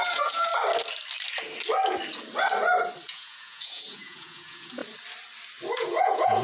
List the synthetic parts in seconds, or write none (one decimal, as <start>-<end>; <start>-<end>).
0.0-0.5; 3.0-4.8; 5.7-6.4